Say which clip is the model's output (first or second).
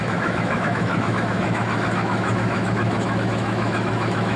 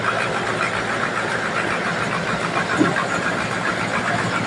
first